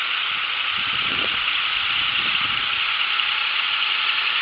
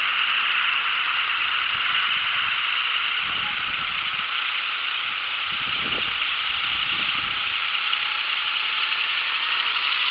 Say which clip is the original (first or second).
second